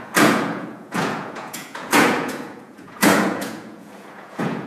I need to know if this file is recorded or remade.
remade